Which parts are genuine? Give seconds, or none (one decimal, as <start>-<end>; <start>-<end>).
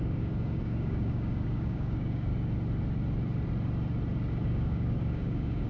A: 2.3-4.3